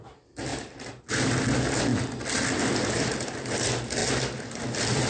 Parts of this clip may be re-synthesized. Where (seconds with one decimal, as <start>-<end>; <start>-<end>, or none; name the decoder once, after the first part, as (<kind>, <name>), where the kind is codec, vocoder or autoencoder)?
none